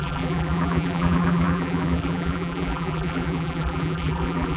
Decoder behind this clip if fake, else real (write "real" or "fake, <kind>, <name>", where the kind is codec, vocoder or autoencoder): fake, vocoder, BigVGAN v2